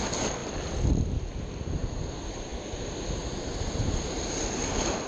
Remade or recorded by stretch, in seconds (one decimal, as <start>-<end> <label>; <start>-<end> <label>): 0.0-0.4 recorded; 0.4-1.4 remade; 1.4-5.1 recorded